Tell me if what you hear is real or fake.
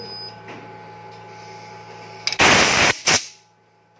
real